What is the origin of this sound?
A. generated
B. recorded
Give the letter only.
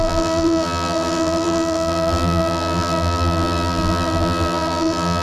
A